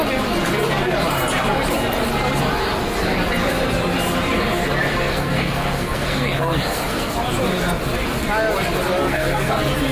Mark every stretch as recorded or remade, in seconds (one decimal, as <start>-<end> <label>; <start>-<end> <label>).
0.0-4.9 recorded; 4.9-7.1 remade; 7.1-9.0 recorded; 9.0-9.5 remade; 9.5-9.9 recorded